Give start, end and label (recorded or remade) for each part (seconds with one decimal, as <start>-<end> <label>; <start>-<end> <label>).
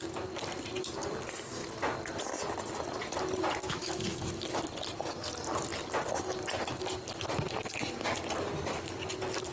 0.0-3.6 recorded; 3.6-4.6 remade; 4.6-9.5 recorded